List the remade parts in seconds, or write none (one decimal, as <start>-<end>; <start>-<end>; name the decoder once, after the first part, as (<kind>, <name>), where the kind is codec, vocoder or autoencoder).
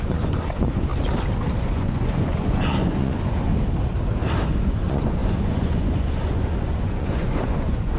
0.0-0.9 (vocoder, Vocos); 1.6-3.5; 4.6-8.0